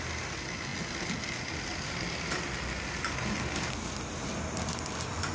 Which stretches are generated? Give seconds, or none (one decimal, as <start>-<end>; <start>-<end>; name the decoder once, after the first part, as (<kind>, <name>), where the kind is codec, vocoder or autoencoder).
none

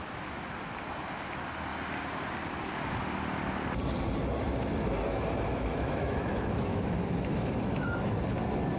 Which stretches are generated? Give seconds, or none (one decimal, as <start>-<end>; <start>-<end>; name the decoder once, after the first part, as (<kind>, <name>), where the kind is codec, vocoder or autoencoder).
5.5-8.1 (autoencoder, DAC-VAE)

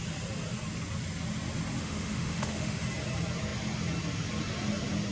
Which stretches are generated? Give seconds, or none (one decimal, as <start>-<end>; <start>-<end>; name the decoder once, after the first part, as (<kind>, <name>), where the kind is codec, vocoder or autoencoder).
1.8-2.8 (autoencoder, DAC-VAE)

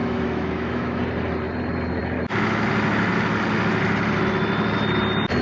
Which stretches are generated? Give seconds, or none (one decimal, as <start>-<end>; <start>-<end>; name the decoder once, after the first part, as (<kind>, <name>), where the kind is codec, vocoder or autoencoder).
0.0-1.0 (autoencoder, DAC-VAE)